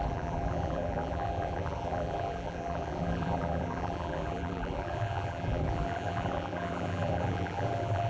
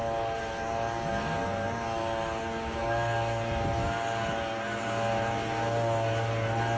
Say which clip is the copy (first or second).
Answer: first